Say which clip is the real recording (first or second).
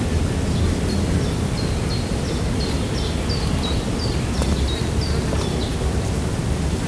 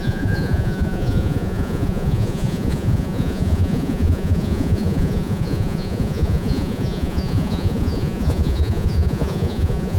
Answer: first